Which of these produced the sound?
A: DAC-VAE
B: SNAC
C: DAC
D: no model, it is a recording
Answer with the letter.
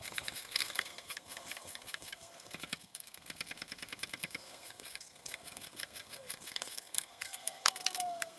B